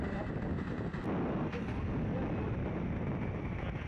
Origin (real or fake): real